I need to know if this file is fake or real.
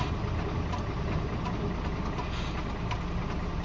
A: real